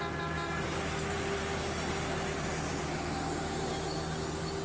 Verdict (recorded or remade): recorded